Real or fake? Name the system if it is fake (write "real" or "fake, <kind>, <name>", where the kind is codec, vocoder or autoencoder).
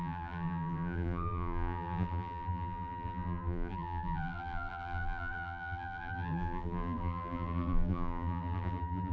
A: fake, vocoder, BigVGAN v2